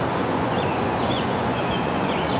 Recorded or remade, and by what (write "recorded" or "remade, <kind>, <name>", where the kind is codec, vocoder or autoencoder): remade, vocoder, Vocos